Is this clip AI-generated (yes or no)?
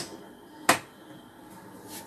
no